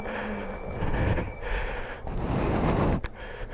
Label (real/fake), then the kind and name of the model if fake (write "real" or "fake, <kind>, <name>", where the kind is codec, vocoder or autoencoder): real